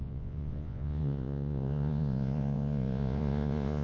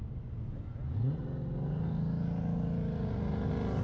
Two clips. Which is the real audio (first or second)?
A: second